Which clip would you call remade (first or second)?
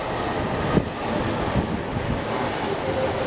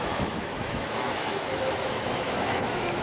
second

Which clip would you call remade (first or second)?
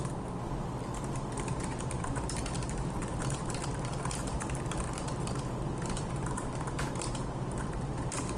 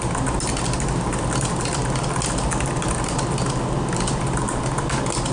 first